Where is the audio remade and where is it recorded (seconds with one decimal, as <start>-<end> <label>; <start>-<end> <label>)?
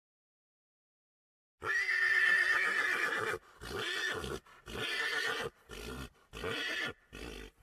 0.0-7.6 recorded